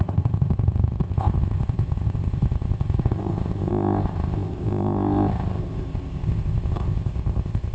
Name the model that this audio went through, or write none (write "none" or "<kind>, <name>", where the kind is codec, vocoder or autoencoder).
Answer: codec, ZipCodec